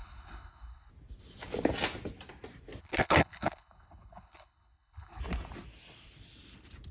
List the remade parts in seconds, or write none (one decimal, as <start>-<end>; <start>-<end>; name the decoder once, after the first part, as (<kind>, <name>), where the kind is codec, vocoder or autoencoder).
0.0-0.9 (codec, HILCodec); 2.8-5.2